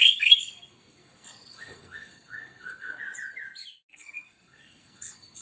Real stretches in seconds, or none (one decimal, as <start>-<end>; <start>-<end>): 3.0-3.9